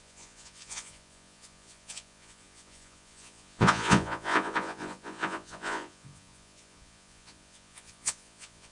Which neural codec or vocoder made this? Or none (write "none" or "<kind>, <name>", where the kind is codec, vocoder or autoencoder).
vocoder, Vocos